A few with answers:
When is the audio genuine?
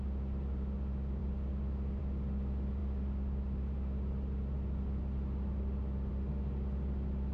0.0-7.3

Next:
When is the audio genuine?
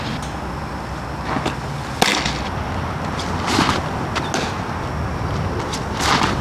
0.0-6.4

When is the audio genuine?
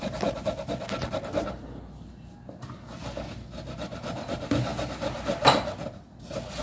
0.0-6.6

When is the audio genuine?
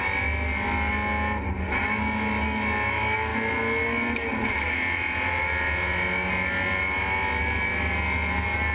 0.0-8.7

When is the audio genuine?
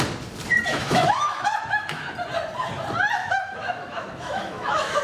0.0-0.7; 2.0-3.2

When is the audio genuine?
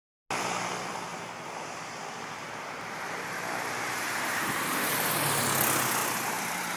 0.0-1.1; 5.2-6.0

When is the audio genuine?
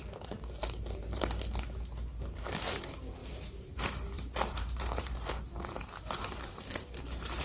0.0-0.6; 1.2-3.2